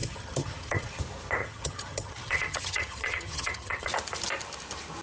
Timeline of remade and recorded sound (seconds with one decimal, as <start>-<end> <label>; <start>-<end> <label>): 0.0-1.0 remade; 1.0-1.4 recorded; 1.4-3.9 remade; 3.9-5.0 recorded